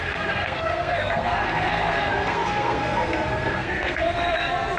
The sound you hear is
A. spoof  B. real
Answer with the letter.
A